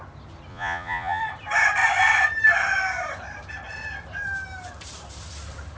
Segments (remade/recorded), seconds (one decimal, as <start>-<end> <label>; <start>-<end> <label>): 0.0-0.5 recorded; 0.5-1.2 remade; 1.2-5.8 recorded